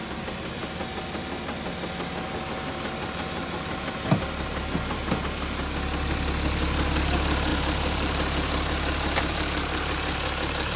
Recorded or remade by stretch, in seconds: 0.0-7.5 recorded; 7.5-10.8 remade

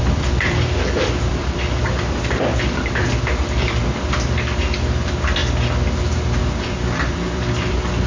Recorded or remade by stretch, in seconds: 0.0-5.4 remade; 5.4-6.0 recorded; 6.0-8.1 remade

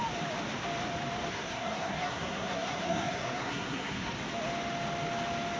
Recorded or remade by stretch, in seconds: 0.0-1.3 recorded; 1.3-4.1 remade; 4.1-5.6 recorded

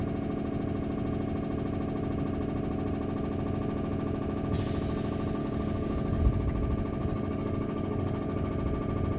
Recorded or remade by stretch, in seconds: 0.0-5.4 recorded; 5.4-6.2 remade; 6.2-7.0 recorded; 7.0-8.5 remade; 8.5-9.2 recorded

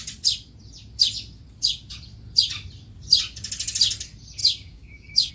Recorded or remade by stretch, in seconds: 0.0-4.4 recorded; 4.4-5.3 remade

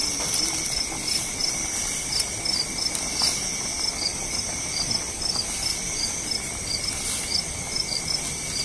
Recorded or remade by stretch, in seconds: 0.0-1.4 recorded; 1.4-3.0 remade; 3.0-4.1 recorded; 4.1-8.1 remade; 8.1-8.6 recorded